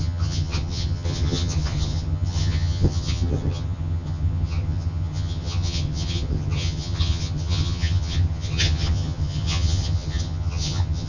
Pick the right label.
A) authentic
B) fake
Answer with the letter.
B